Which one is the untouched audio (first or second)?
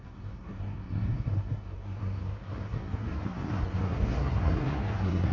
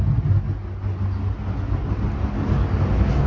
second